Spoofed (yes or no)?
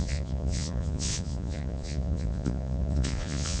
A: yes